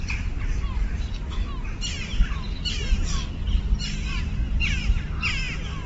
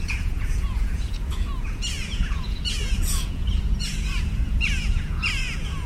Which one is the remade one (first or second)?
second